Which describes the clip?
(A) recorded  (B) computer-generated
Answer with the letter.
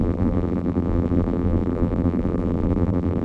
B